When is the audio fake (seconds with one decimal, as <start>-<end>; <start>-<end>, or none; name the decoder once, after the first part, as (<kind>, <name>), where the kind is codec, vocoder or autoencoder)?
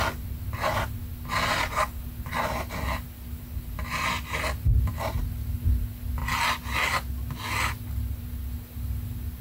none